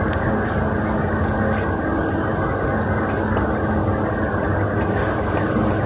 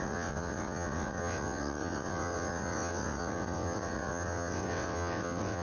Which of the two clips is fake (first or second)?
second